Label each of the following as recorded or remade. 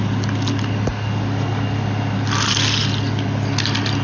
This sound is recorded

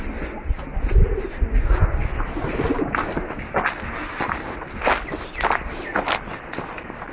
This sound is recorded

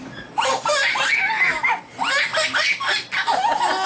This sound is recorded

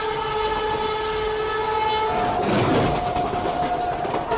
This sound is recorded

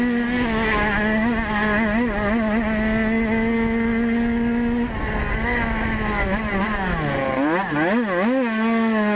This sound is recorded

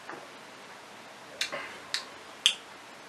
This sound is recorded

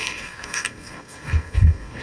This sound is remade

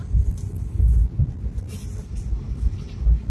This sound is recorded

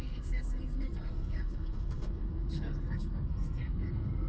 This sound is remade